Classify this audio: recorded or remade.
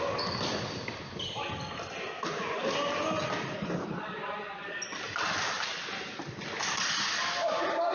recorded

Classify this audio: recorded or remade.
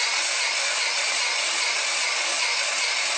remade